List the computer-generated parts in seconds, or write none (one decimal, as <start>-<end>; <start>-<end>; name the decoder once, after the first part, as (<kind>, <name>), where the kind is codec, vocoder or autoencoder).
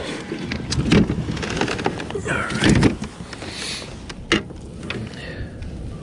none